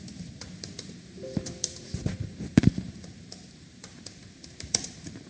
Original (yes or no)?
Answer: no